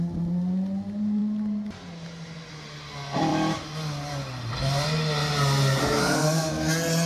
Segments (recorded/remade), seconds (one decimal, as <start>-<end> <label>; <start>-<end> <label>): 0.0-5.8 recorded; 5.8-6.5 remade; 6.5-7.1 recorded